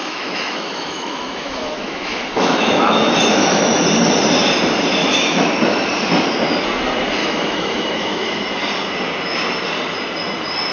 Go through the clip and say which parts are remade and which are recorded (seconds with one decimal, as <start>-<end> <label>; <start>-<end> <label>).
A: 0.0-3.8 remade; 3.8-5.0 recorded; 5.0-5.5 remade; 5.5-7.2 recorded; 7.2-8.4 remade; 8.4-10.7 recorded